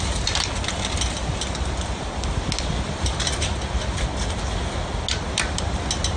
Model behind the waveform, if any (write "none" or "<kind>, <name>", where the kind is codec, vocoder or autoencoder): none